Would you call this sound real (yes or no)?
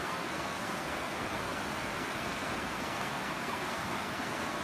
no